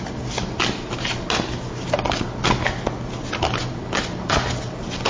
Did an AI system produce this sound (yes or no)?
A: no